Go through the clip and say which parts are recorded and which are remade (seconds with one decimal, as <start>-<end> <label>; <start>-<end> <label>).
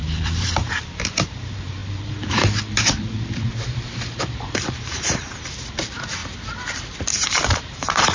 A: 0.0-6.2 remade; 6.2-7.1 recorded; 7.1-8.1 remade